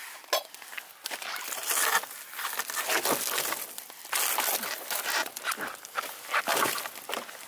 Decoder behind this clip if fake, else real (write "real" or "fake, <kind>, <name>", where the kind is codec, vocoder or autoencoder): real